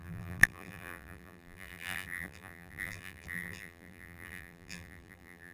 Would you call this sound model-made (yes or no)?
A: yes